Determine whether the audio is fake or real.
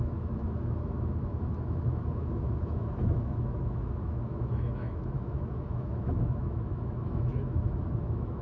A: fake